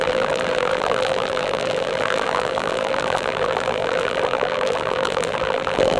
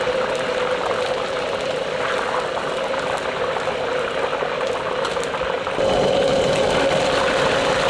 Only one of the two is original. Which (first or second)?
second